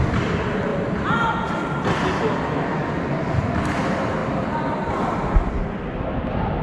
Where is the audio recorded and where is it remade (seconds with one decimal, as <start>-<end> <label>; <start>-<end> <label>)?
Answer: 0.0-6.6 recorded